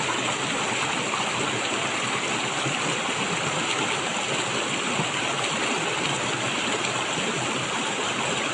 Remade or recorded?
recorded